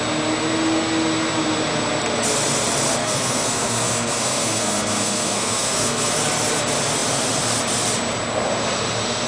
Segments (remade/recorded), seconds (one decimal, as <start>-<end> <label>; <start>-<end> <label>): 0.0-3.0 recorded; 3.0-6.1 remade; 6.1-9.3 recorded